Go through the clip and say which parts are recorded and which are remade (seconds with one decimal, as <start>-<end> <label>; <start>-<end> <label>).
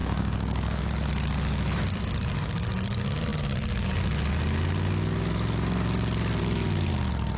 0.0-0.8 remade; 0.8-7.4 recorded